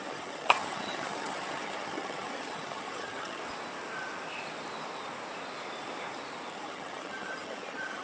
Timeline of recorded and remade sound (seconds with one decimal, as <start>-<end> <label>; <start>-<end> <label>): 0.0-3.4 remade; 3.4-6.5 recorded; 6.5-8.0 remade